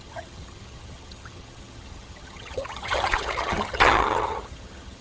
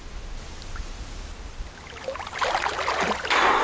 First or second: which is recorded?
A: second